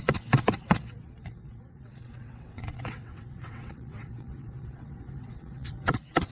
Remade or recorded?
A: remade